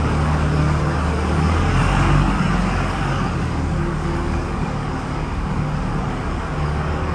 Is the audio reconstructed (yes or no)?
yes